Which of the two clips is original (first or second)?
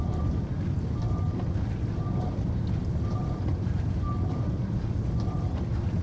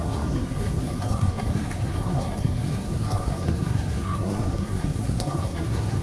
first